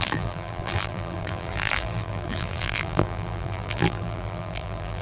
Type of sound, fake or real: fake